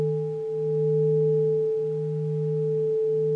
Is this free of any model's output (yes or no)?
yes